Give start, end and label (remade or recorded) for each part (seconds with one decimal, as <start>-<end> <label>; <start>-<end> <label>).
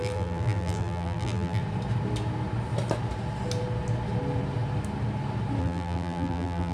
0.0-1.6 remade; 1.6-5.6 recorded; 5.6-6.7 remade